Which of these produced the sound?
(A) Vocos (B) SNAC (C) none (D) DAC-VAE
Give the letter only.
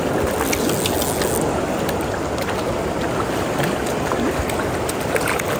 C